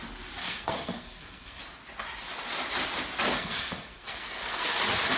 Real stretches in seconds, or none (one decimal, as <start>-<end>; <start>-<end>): 0.0-0.4; 1.6-3.3; 4.8-5.2